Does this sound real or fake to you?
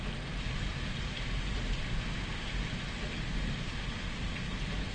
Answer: real